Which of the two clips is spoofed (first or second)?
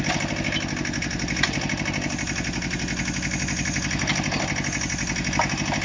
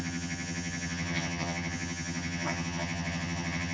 second